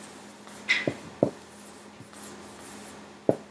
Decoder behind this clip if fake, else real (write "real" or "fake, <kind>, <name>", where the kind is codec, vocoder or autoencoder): real